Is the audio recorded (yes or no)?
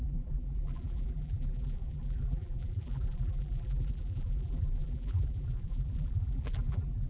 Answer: no